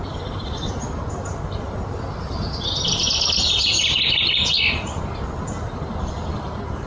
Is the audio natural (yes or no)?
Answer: yes